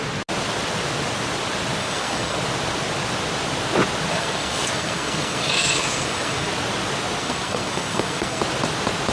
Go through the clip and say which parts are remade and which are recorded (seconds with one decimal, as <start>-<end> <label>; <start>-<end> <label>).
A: 0.0-1.8 recorded; 1.8-2.4 remade; 2.4-4.1 recorded; 4.1-6.5 remade; 6.5-7.2 recorded; 7.2-8.4 remade; 8.4-9.1 recorded